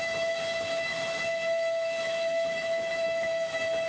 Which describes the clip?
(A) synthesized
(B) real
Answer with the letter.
A